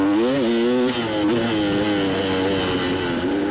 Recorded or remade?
recorded